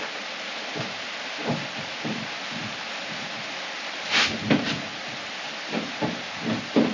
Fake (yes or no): no